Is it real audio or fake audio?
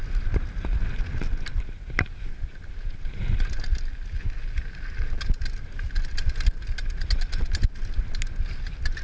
real